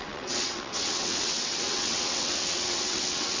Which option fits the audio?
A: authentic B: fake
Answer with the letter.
B